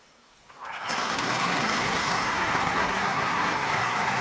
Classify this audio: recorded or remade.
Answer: remade